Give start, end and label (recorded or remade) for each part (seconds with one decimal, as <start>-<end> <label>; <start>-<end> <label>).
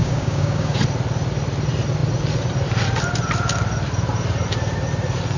0.0-0.8 remade; 0.8-5.4 recorded